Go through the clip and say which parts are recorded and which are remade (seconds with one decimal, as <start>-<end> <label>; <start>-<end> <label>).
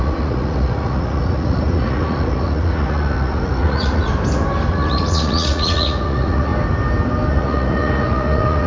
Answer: 0.0-4.1 remade; 4.1-4.7 recorded; 4.7-6.5 remade; 6.5-7.3 recorded; 7.3-8.7 remade